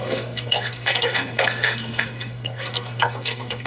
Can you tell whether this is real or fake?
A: fake